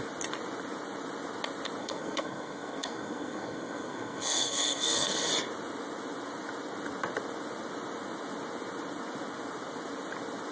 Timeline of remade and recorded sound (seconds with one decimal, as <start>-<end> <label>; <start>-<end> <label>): 0.0-1.8 recorded; 1.8-5.3 remade; 5.3-10.5 recorded